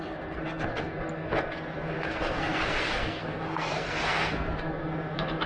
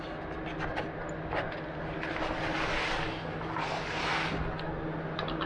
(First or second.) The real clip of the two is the second